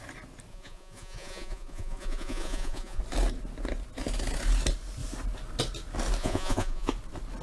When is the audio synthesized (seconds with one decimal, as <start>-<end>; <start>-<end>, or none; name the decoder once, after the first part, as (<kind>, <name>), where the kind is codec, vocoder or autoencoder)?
0.5-3.0 (vocoder, Vocos); 6.2-6.9